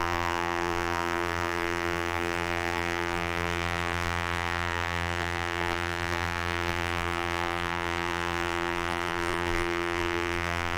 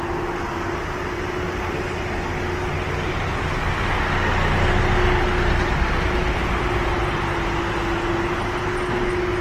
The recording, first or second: second